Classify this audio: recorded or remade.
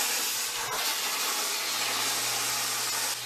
recorded